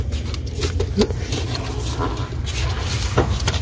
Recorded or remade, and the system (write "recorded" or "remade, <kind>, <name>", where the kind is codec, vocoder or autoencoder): recorded